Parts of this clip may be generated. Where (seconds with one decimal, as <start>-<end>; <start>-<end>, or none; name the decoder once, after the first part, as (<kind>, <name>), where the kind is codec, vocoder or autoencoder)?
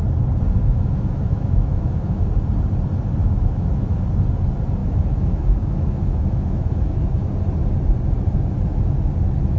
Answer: 0.6-2.3 (autoencoder, DAC-VAE); 3.2-4.0; 4.8-7.3